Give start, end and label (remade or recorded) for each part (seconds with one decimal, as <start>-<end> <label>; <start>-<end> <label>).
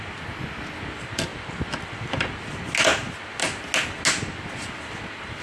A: 0.0-5.4 recorded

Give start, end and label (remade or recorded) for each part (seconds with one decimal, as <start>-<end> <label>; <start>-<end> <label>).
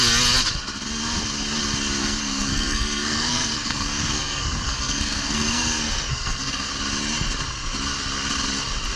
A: 0.0-2.0 recorded; 2.0-6.7 remade; 6.7-9.0 recorded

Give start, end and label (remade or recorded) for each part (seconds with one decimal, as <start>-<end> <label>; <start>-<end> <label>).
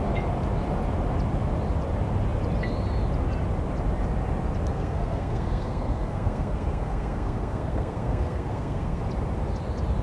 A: 0.0-4.7 recorded; 4.7-9.0 remade; 9.0-10.0 recorded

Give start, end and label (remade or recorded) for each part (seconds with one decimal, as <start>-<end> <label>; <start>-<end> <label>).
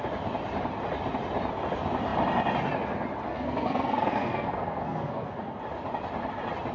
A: 0.0-3.3 recorded; 3.3-5.6 remade; 5.6-6.7 recorded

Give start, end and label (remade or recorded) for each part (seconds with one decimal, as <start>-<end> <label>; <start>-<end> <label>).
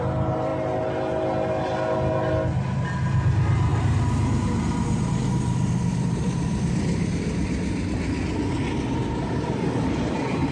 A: 0.0-10.5 recorded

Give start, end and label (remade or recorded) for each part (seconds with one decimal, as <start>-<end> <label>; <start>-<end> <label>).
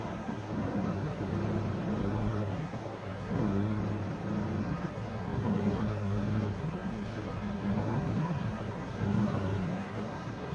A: 0.0-1.3 remade; 1.3-2.0 recorded; 2.0-3.8 remade; 3.8-4.6 recorded; 4.6-10.5 remade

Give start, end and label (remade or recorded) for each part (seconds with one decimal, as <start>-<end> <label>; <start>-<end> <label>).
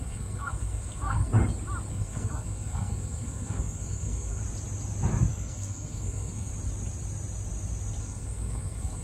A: 0.0-1.3 remade; 1.3-1.9 recorded; 1.9-4.4 remade; 4.4-5.3 recorded; 5.3-6.5 remade; 6.5-8.0 recorded; 8.0-9.0 remade